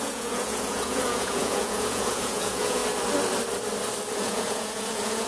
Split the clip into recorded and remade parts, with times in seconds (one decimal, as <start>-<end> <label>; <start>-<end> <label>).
0.0-2.8 remade; 2.8-4.1 recorded; 4.1-5.3 remade